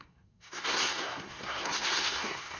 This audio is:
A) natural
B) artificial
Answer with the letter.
B